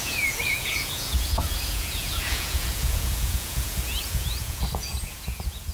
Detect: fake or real fake